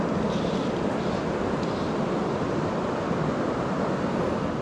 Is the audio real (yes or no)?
yes